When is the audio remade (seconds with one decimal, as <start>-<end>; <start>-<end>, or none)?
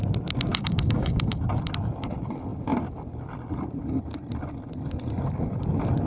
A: 0.5-1.3